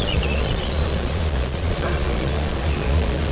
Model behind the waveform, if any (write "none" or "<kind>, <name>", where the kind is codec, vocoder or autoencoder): vocoder, Vocos